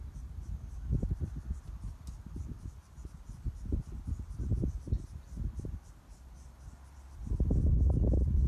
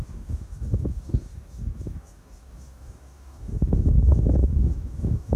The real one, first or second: first